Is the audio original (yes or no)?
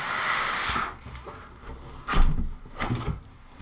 yes